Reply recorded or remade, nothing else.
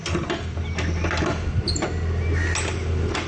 recorded